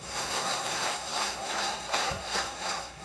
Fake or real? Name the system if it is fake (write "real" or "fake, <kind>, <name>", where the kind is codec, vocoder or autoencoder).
fake, codec, SNAC